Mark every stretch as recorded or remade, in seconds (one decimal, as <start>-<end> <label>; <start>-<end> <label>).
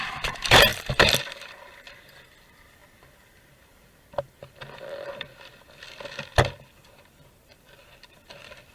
0.0-8.7 remade